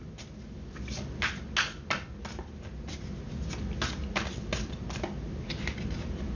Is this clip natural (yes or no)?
yes